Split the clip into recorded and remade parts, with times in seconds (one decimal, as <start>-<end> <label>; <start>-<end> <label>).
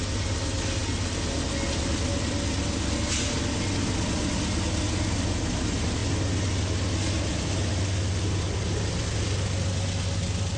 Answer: 0.0-10.6 recorded